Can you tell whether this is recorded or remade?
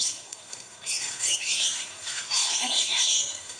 remade